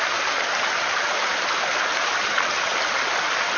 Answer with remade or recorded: recorded